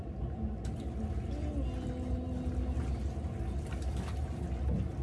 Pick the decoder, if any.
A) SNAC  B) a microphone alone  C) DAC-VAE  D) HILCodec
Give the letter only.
B